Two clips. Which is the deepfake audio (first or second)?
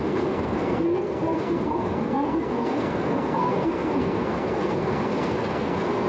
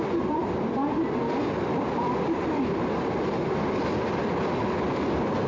first